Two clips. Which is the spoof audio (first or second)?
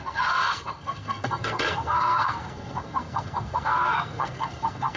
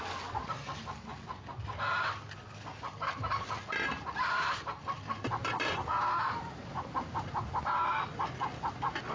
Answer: first